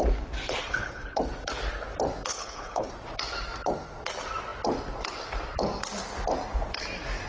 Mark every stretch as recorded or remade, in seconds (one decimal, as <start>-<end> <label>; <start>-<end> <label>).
0.0-0.6 recorded; 0.6-1.2 remade; 1.2-2.3 recorded; 2.3-2.9 remade; 2.9-7.3 recorded